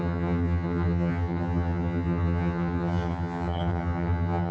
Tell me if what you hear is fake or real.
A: fake